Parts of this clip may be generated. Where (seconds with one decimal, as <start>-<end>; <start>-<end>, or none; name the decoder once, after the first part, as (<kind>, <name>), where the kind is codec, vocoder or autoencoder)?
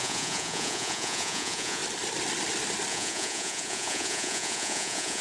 0.0-1.8 (vocoder, Vocos); 2.9-5.2